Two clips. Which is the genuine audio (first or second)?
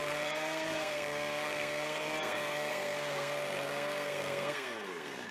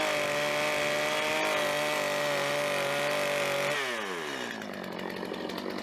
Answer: second